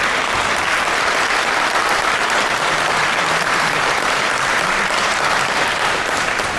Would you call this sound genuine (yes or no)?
no